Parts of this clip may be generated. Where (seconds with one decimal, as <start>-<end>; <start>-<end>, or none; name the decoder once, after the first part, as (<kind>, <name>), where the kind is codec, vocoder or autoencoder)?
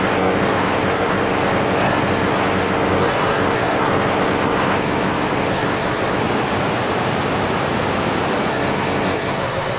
0.0-6.2 (codec, SNAC); 8.5-9.8